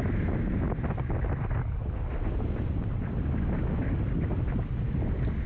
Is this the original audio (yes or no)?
yes